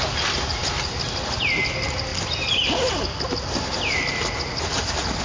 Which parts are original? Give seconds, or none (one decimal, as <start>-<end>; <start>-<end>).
0.0-5.2